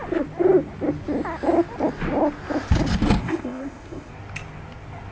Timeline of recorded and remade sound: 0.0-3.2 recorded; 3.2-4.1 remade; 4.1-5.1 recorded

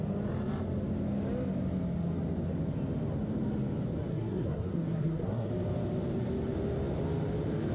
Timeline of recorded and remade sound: 0.0-4.1 recorded; 4.1-5.5 remade; 5.5-7.7 recorded

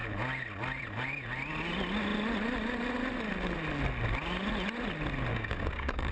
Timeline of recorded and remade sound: 0.0-5.3 recorded; 5.3-6.1 remade

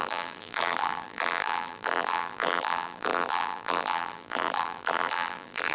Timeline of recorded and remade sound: 0.0-5.7 remade

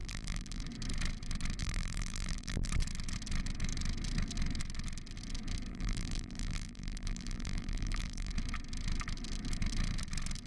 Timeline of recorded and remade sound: 0.0-0.6 remade; 0.6-1.6 recorded; 1.6-2.7 remade; 2.7-5.7 recorded; 5.7-8.3 remade; 8.3-10.5 recorded